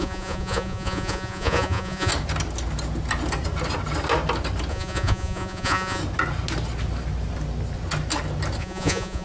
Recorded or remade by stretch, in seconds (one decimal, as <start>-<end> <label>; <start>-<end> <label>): 0.0-2.1 remade; 2.1-4.7 recorded; 4.7-6.0 remade; 6.0-8.6 recorded; 8.6-9.2 remade